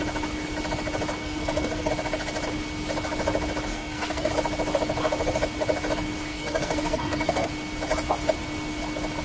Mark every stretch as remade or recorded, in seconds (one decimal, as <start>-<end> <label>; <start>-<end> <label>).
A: 0.0-1.2 recorded; 1.2-1.9 remade; 1.9-3.7 recorded; 3.7-4.3 remade; 4.3-6.3 recorded; 6.3-7.5 remade; 7.5-9.2 recorded